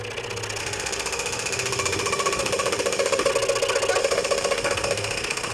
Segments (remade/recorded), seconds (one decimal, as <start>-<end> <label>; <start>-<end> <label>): 0.0-0.6 recorded; 0.6-3.3 remade; 3.3-4.0 recorded; 4.0-5.5 remade